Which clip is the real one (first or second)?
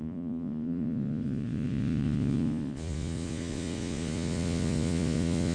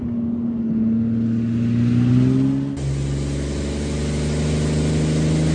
second